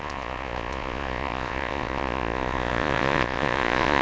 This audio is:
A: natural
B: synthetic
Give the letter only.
B